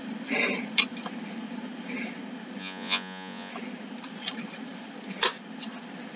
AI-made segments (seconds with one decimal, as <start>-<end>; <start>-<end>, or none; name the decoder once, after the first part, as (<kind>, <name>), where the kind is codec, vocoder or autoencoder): 2.6-3.5 (vocoder, Vocos)